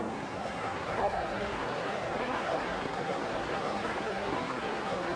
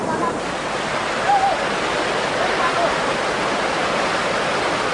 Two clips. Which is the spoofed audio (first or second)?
first